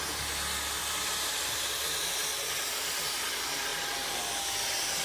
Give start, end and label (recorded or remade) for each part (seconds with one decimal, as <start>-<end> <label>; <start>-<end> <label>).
0.0-5.0 recorded

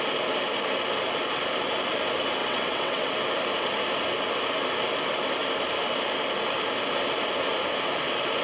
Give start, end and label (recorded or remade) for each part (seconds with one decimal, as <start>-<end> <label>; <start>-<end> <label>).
0.0-2.4 recorded; 2.4-3.1 remade; 3.1-8.4 recorded

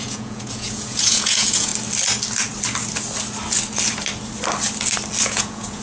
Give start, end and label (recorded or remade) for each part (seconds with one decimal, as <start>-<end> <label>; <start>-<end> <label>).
0.0-1.7 remade; 1.7-5.2 recorded; 5.2-5.8 remade